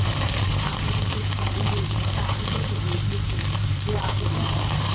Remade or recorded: remade